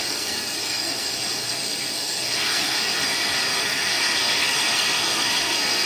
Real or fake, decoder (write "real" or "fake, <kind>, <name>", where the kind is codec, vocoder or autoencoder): fake, codec, SNAC